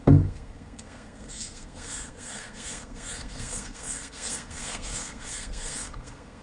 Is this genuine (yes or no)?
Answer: no